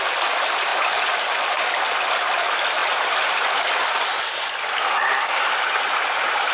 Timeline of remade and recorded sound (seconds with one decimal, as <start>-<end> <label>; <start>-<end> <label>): 0.0-6.5 recorded